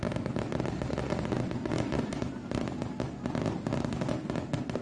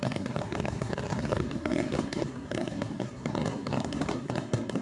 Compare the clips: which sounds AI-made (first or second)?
second